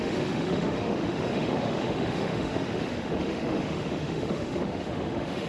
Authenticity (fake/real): fake